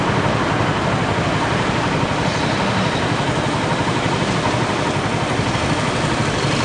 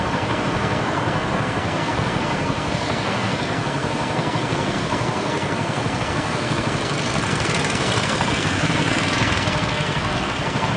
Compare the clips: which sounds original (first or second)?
first